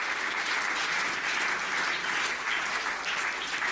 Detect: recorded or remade recorded